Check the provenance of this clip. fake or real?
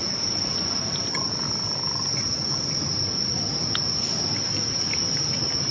real